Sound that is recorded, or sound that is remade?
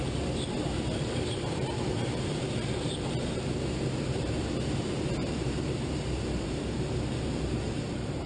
remade